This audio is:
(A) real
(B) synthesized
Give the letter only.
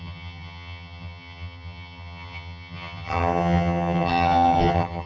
B